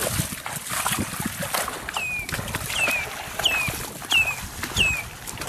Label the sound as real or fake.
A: real